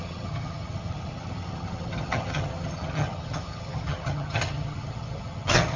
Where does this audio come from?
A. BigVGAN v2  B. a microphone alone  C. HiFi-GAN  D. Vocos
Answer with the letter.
C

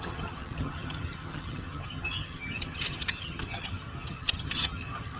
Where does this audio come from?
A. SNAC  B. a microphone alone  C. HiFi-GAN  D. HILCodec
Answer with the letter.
C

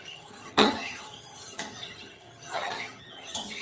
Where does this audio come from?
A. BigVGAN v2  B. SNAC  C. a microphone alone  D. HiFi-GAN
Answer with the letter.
D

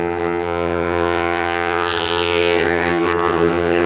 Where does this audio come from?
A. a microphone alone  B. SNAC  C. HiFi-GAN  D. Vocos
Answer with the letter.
C